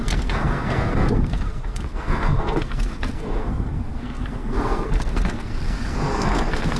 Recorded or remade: remade